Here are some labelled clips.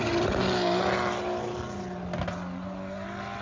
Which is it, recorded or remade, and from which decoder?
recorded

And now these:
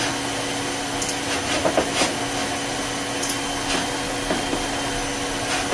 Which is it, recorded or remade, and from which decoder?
recorded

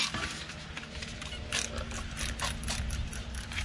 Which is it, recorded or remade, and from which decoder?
recorded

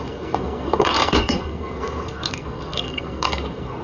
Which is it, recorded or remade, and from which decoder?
remade, codec, SNAC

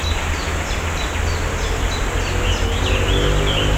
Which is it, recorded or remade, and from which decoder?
recorded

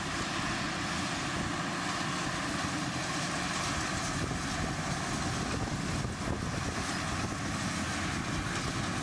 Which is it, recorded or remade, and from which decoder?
recorded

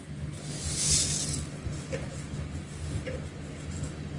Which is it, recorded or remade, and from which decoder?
recorded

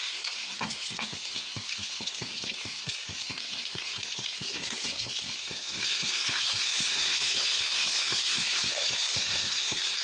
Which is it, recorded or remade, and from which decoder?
remade, codec, SNAC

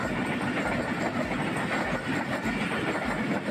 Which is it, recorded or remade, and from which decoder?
recorded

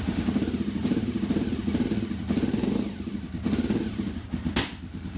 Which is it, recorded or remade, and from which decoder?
recorded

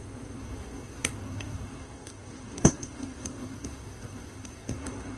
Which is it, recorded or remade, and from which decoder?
remade, codec, SNAC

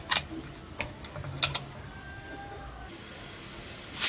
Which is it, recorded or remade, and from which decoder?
recorded